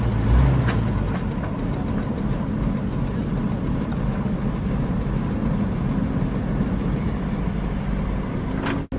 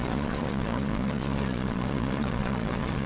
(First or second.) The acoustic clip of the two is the first